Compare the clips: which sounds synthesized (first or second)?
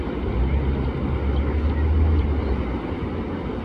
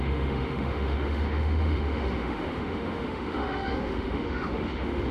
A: second